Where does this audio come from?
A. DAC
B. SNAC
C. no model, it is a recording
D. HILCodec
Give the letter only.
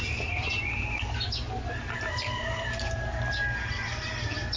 C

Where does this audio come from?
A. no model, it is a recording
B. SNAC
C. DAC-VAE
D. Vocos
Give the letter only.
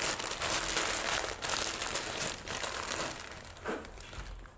A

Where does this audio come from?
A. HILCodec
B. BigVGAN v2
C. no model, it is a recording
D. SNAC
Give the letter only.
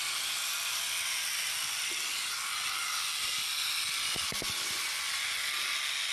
C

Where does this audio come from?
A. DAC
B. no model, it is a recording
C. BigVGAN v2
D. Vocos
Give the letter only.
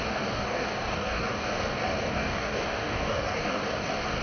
A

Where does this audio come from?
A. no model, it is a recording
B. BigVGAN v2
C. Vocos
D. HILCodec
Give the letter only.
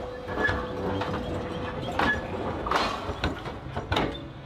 A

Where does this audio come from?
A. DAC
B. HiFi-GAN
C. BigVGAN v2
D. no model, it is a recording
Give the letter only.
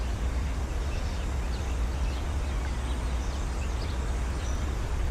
D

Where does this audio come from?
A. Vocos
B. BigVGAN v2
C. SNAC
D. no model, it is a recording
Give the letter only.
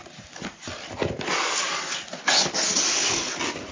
D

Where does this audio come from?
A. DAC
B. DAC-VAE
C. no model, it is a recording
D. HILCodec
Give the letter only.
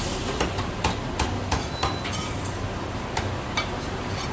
C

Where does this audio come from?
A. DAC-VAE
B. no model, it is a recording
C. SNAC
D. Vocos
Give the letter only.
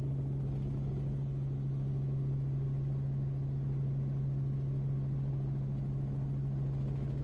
B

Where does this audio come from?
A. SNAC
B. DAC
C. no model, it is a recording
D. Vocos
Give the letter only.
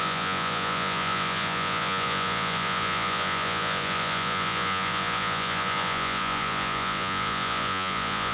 D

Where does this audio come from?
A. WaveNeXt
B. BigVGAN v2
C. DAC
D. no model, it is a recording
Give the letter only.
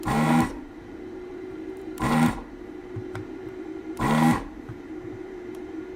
B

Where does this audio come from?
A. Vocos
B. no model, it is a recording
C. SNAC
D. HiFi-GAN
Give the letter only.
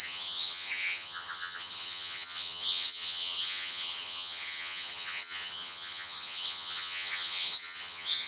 D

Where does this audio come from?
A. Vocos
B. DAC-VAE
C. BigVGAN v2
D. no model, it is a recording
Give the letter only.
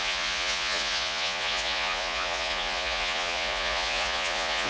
A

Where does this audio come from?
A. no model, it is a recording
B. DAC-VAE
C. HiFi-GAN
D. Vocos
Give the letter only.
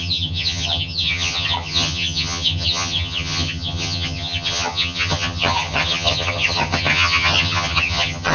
C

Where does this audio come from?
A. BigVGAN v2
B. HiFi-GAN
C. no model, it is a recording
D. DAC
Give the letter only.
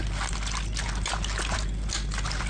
C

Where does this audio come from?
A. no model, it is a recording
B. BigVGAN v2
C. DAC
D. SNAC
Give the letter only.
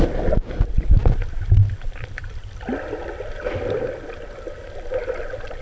A